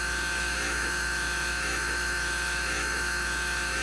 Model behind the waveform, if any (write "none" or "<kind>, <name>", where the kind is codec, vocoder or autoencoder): autoencoder, DAC-VAE